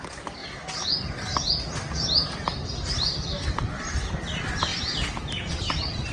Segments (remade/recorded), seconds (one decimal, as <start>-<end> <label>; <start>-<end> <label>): 0.0-6.1 recorded